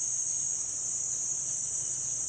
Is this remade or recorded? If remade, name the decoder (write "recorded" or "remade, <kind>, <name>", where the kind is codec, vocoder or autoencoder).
remade, vocoder, Vocos